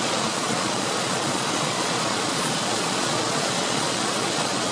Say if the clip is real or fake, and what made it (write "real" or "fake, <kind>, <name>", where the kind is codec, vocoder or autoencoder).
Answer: fake, vocoder, Vocos